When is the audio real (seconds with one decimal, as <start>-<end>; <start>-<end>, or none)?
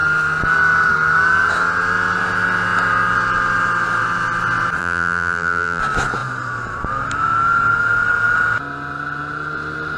0.0-4.8; 5.8-10.0